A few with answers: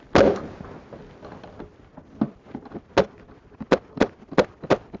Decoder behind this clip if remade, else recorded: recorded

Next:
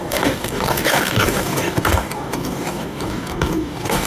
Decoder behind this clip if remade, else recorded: remade, codec, DAC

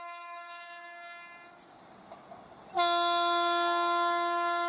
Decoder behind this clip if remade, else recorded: recorded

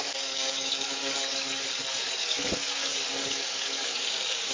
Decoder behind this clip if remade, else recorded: remade, codec, DAC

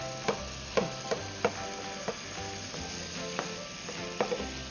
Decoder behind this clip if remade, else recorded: recorded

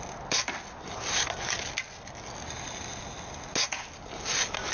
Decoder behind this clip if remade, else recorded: recorded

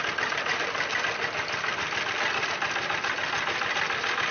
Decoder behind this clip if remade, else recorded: recorded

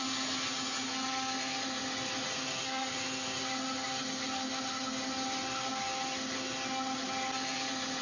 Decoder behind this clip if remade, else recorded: recorded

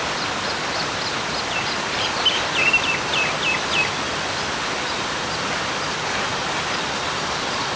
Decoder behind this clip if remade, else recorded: recorded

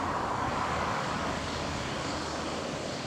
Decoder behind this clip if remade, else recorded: remade, codec, DAC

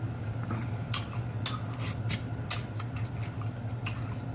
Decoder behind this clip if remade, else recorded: recorded